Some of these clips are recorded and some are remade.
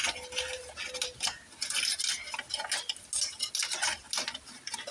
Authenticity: recorded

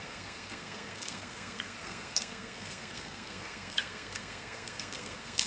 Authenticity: remade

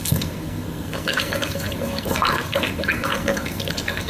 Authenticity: remade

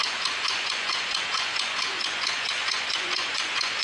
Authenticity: remade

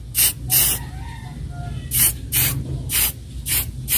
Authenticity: recorded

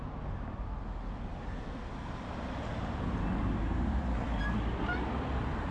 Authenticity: recorded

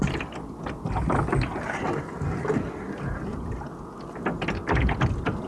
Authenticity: recorded